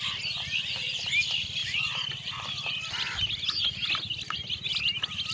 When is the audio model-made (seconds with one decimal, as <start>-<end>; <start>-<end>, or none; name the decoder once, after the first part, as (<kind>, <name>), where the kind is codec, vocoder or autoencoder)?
1.6-4.8 (vocoder, BigVGAN v2)